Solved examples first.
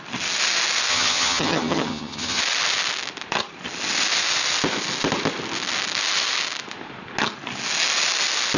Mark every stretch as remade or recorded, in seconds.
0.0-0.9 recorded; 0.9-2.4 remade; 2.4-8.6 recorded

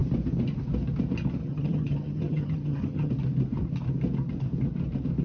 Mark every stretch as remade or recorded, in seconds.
0.0-1.4 recorded; 1.4-3.1 remade; 3.1-5.2 recorded

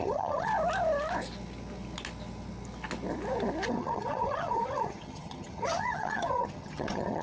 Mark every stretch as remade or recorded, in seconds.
0.0-0.5 remade; 0.5-3.7 recorded; 3.7-7.2 remade

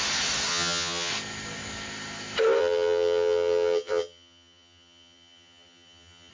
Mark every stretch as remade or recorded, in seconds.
0.0-0.5 recorded; 0.5-1.1 remade; 1.1-2.6 recorded; 2.6-6.3 remade